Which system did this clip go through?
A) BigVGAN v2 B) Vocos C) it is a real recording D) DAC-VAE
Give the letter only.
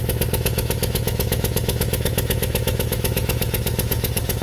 D